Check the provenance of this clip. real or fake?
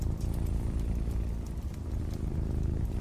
real